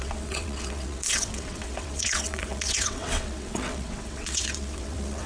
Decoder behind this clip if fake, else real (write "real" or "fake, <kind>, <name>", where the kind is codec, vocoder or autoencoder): fake, vocoder, WaveNeXt